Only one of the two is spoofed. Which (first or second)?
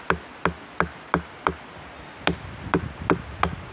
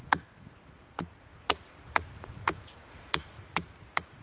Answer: second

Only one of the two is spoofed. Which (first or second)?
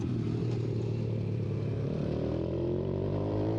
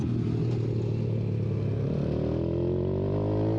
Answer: first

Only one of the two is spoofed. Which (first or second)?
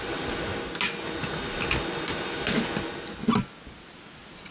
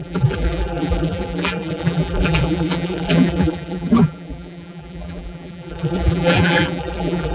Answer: second